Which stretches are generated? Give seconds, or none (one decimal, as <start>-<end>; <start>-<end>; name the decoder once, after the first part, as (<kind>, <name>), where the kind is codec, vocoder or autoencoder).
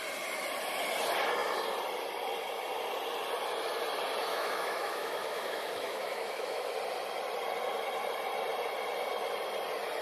4.3-6.7 (autoencoder, DAC-VAE)